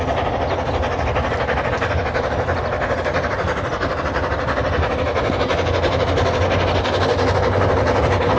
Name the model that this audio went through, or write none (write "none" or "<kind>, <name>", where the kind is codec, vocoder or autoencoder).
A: none